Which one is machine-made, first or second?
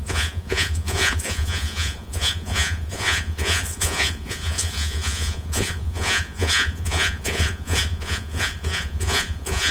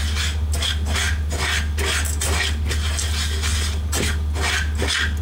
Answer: first